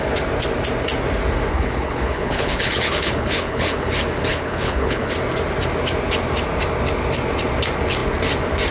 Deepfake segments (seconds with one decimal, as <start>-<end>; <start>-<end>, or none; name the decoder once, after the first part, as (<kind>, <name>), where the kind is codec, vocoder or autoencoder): 1.5-3.9 (codec, HILCodec); 4.3-5.1